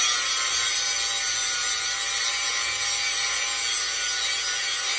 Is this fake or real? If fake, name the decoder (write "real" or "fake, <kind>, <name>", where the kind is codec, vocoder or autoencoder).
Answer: real